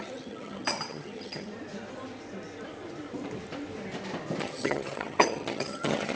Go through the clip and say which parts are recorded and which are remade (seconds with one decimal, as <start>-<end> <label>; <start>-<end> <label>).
0.0-1.5 remade; 1.5-4.4 recorded; 4.4-6.2 remade